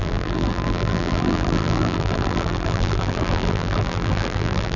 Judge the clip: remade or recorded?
remade